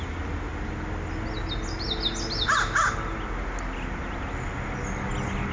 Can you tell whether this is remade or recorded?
recorded